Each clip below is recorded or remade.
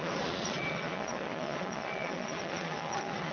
remade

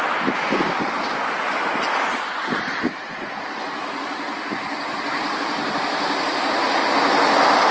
recorded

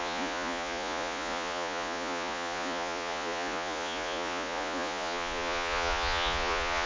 remade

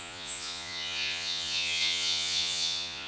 remade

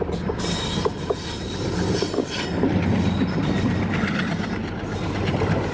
recorded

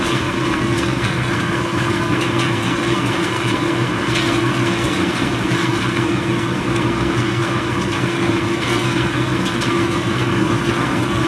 remade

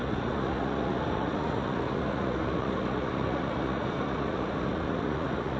remade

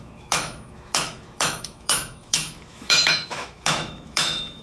remade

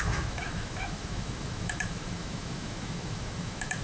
remade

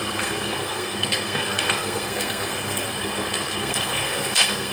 remade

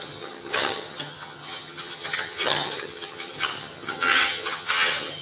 remade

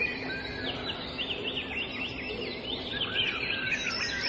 recorded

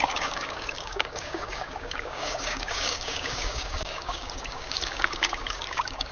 remade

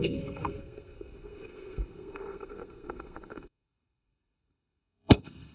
remade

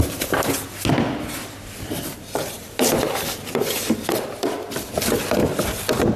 recorded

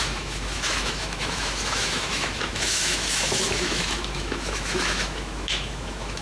remade